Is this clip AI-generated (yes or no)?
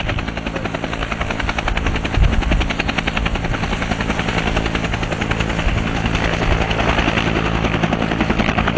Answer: no